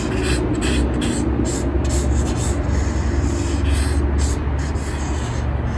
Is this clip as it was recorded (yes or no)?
yes